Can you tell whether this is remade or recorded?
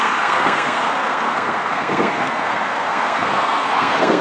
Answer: remade